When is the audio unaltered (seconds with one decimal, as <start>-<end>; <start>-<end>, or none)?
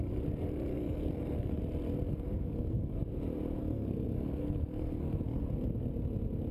0.0-0.7; 1.6-2.1; 2.9-3.6; 5.4-6.5